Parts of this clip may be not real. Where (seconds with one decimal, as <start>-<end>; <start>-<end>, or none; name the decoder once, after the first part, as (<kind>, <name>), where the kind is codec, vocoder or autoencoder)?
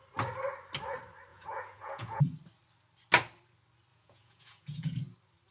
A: 1.3-2.3 (vocoder, Vocos); 3.9-5.0